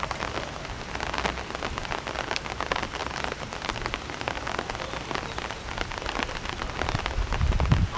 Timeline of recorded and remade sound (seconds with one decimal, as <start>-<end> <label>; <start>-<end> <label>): 0.0-8.0 recorded